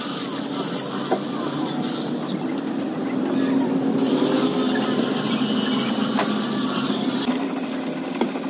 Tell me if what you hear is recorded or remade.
recorded